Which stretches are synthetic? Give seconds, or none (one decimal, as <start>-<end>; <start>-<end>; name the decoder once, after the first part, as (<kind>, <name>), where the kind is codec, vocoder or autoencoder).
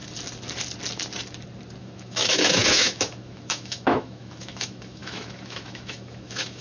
1.8-6.6 (autoencoder, DAC-VAE)